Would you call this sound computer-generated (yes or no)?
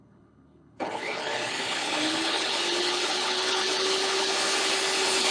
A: yes